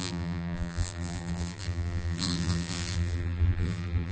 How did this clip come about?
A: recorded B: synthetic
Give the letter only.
B